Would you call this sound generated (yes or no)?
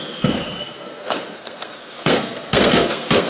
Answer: yes